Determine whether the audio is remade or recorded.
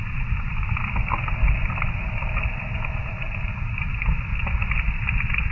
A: recorded